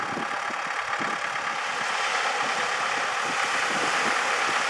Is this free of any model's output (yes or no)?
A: yes